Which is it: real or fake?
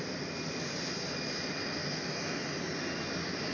real